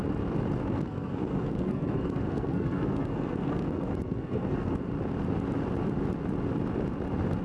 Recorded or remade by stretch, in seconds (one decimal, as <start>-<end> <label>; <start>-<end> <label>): 0.0-0.6 recorded; 0.6-4.9 remade; 4.9-7.4 recorded